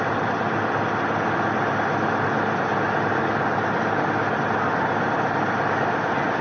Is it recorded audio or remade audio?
recorded